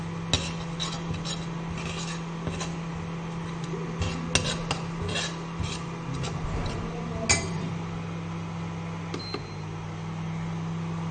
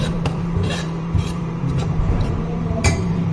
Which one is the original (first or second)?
first